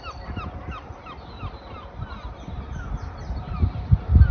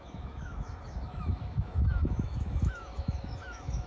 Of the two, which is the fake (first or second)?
second